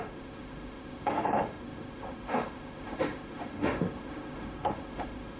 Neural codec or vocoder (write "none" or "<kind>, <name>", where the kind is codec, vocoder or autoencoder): autoencoder, DAC-VAE